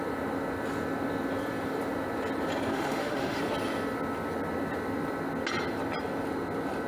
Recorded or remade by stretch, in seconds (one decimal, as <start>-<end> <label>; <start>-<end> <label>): 0.0-2.7 recorded; 2.7-3.4 remade; 3.4-6.9 recorded